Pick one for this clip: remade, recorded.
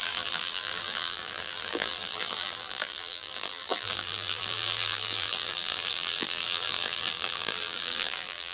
remade